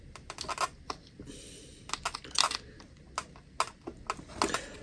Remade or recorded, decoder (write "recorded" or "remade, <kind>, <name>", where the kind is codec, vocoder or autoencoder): recorded